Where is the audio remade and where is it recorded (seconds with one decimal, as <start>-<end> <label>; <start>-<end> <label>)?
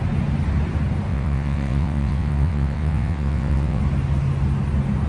0.0-1.1 recorded; 1.1-3.8 remade; 3.8-5.1 recorded